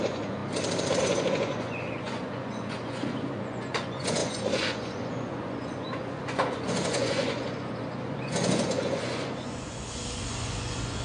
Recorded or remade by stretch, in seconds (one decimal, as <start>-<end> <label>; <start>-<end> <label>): 0.0-0.4 remade; 0.4-1.0 recorded; 1.0-11.0 remade